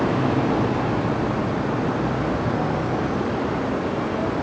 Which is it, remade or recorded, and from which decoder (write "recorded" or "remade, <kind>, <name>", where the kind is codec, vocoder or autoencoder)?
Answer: recorded